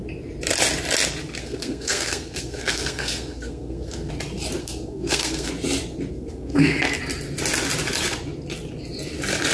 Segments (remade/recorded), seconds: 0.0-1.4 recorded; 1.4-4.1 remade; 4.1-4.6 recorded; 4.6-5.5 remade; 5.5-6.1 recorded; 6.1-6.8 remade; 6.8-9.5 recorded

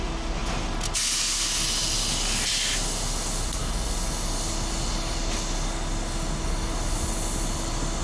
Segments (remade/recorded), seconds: 0.0-8.0 recorded

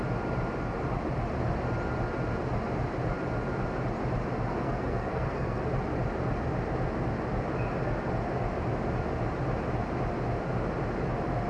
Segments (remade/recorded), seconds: 0.0-4.5 recorded; 4.5-5.6 remade; 5.6-11.5 recorded

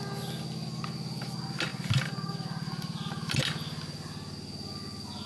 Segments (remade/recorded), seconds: 0.0-5.3 recorded